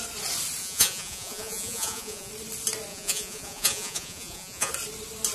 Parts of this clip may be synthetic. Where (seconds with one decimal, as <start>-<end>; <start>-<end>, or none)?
0.6-2.3; 2.9-4.7